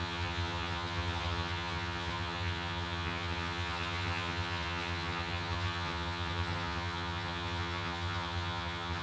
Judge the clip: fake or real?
fake